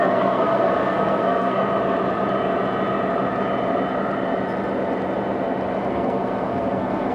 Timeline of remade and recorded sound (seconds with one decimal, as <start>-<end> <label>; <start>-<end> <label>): 0.0-1.6 remade; 1.6-5.9 recorded; 5.9-7.1 remade